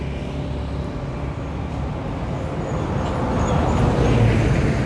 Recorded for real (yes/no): yes